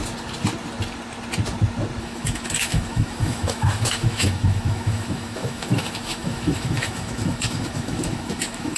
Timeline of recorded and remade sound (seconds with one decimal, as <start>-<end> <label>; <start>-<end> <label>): 0.0-2.0 recorded; 2.0-8.8 remade